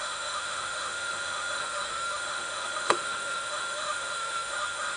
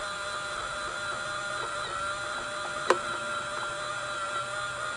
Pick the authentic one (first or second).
second